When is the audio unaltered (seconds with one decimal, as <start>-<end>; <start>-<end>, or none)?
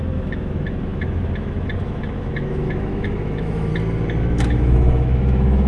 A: 3.7-4.2